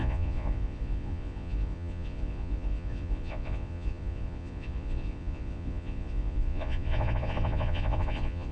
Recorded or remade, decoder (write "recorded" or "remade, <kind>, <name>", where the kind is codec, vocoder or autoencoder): remade, vocoder, Vocos